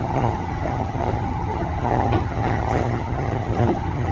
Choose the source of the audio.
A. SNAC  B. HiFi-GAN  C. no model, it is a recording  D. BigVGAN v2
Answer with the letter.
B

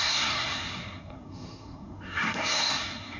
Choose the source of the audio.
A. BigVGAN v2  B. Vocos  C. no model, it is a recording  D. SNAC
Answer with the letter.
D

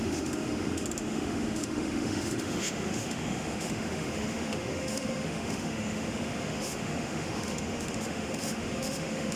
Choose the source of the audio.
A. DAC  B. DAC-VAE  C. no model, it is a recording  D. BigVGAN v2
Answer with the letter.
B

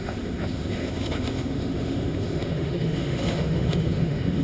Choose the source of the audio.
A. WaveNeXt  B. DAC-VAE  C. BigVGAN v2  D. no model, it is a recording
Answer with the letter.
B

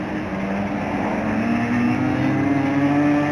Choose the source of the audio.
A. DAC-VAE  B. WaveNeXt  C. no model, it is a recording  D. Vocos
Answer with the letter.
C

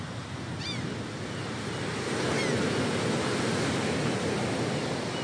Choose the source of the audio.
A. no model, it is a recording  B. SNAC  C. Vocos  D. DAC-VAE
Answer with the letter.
A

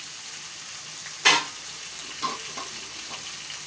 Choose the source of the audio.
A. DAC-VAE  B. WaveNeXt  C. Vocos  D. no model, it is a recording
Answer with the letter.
D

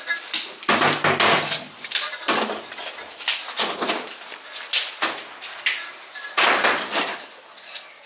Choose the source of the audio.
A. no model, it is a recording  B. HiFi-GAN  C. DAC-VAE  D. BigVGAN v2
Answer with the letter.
A